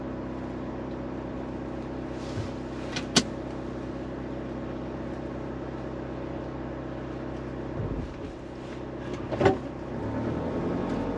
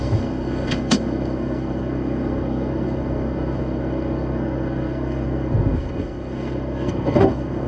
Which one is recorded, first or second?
first